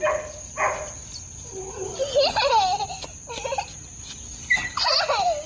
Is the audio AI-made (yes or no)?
no